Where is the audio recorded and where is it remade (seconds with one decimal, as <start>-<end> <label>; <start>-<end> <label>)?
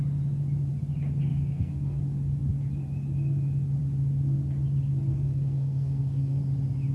0.0-1.3 recorded; 1.3-2.0 remade; 2.0-5.1 recorded; 5.1-6.4 remade; 6.4-6.9 recorded